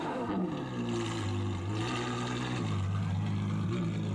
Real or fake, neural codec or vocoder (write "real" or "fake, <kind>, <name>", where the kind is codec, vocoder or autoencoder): real